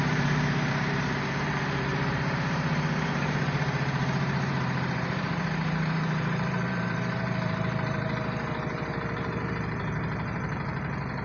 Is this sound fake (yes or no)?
yes